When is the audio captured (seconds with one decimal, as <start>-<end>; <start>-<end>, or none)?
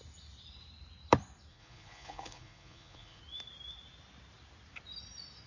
0.0-1.5; 3.2-5.5